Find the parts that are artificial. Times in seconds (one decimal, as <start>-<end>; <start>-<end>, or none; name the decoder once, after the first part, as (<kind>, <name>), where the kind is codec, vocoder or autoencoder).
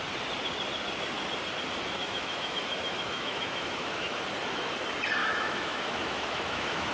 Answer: 2.0-4.2 (autoencoder, DAC-VAE); 5.2-6.9